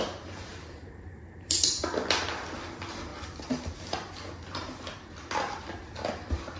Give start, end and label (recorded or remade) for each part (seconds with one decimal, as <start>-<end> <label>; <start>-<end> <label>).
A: 0.0-0.5 recorded; 0.5-1.8 remade; 1.8-6.6 recorded